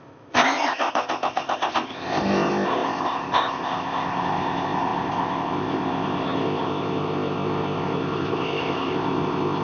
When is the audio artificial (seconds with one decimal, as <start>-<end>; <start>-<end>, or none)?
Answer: 0.0-9.6